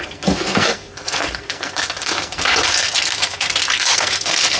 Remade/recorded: remade